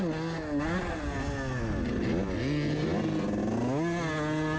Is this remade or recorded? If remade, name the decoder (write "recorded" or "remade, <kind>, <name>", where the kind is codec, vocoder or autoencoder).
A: recorded